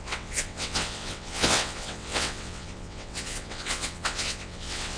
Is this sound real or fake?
fake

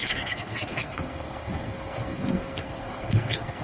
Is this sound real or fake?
fake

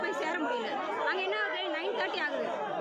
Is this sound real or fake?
real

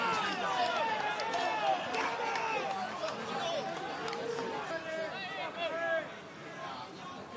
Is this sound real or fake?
real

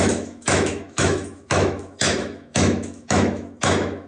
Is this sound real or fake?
fake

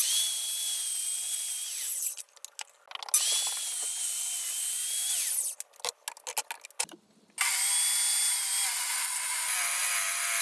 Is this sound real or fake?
real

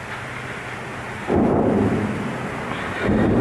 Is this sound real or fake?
real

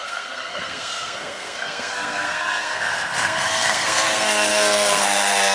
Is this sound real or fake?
fake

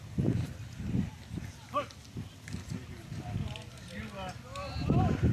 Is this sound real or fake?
fake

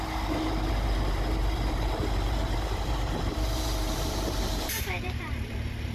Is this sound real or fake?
fake